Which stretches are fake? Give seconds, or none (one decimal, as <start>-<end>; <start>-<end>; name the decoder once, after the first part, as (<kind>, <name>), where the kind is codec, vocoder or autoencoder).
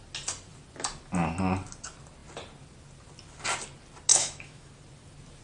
4.1-4.7 (autoencoder, DAC-VAE)